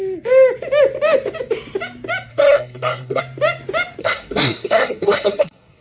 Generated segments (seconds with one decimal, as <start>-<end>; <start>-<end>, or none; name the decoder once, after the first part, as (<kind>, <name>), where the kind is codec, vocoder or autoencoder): 2.3-3.2 (codec, SNAC); 4.0-5.8